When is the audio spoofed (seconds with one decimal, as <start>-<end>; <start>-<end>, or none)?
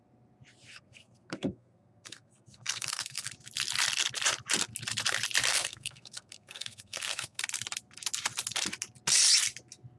0.7-3.3; 5.5-7.4